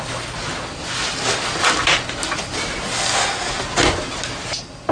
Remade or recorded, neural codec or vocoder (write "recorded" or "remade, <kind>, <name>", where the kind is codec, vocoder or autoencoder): recorded